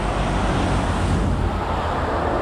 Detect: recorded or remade recorded